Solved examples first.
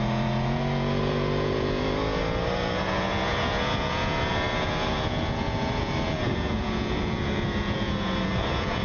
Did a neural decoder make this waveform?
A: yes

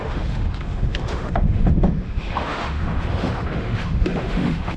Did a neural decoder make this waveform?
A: yes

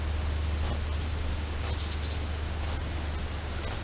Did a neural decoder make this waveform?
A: no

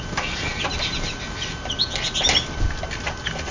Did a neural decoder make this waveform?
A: no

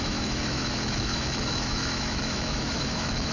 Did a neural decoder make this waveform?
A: yes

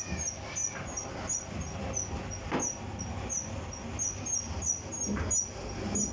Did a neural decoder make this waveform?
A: no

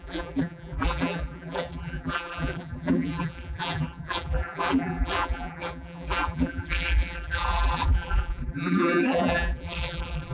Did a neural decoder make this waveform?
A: yes